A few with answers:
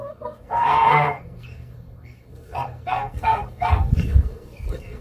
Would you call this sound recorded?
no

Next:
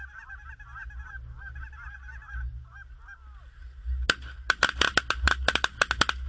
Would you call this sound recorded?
yes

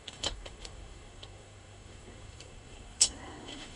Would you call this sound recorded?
no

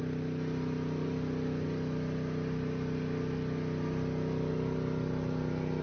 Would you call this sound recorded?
yes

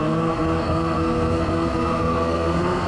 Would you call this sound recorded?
no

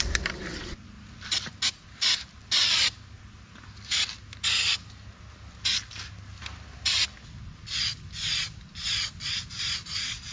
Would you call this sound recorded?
yes